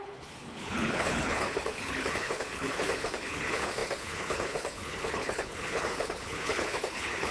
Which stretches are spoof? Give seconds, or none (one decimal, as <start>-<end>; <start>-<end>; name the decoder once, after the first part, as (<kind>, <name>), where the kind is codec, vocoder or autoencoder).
0.0-7.3 (codec, HILCodec)